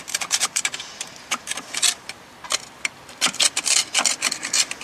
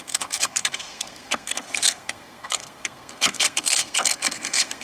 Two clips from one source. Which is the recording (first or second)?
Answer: first